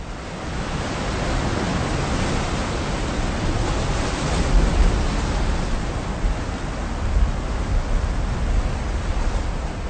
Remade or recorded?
recorded